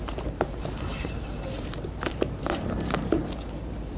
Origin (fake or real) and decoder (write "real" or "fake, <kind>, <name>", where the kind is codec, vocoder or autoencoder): fake, vocoder, BigVGAN v2